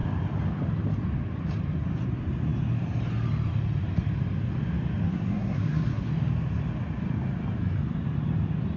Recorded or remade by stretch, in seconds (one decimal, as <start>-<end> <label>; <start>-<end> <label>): 0.0-5.1 recorded; 5.1-6.1 remade; 6.1-8.8 recorded